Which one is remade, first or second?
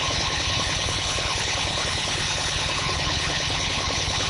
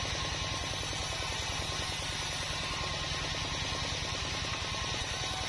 first